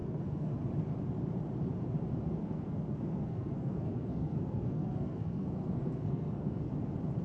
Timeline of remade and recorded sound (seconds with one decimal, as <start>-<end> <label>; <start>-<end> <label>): 0.0-0.5 remade; 0.5-2.4 recorded; 2.4-6.7 remade; 6.7-7.2 recorded